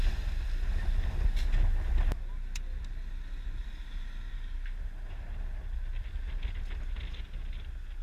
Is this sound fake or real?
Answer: real